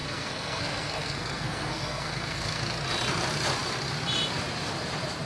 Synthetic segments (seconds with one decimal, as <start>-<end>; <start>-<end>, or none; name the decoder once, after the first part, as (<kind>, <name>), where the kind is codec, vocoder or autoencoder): 0.0-2.7 (codec, SNAC)

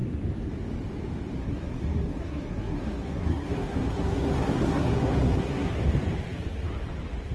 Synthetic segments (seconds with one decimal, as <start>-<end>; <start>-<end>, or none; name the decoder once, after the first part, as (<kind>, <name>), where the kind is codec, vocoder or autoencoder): 1.4-5.8 (codec, SNAC)

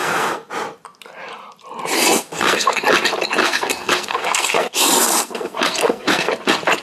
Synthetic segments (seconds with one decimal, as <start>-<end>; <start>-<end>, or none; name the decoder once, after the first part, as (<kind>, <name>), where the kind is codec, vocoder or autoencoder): 0.0-0.5 (codec, SNAC); 2.0-2.8; 3.4-6.3

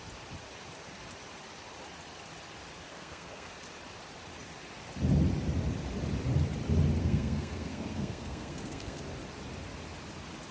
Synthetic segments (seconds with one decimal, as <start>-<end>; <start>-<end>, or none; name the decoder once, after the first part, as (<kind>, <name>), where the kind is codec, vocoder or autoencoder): 2.9-3.5 (codec, SNAC); 7.0-9.0

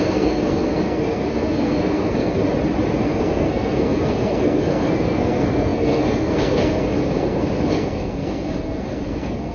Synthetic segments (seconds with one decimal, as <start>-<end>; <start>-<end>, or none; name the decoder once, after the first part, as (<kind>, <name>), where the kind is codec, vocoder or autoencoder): 0.0-2.4 (codec, SNAC); 3.0-9.5

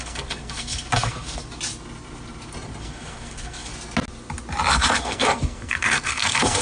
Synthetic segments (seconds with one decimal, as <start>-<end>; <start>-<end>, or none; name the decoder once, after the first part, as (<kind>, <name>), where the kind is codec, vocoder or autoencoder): 0.0-1.4 (codec, SNAC); 2.8-3.7; 4.7-6.6

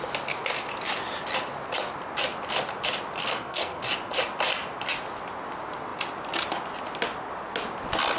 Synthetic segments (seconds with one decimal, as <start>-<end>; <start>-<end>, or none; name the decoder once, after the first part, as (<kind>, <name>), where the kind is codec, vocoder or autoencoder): 3.2-3.8 (codec, SNAC)